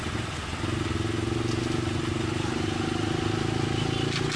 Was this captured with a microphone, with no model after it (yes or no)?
yes